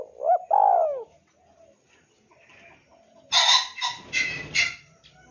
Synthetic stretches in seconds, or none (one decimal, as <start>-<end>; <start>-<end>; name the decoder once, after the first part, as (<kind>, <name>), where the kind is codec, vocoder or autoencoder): none